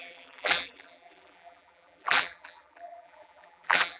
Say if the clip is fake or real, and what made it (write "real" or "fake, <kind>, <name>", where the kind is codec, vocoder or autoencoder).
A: fake, vocoder, BigVGAN v2